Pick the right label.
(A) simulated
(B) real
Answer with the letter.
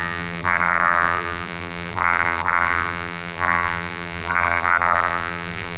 A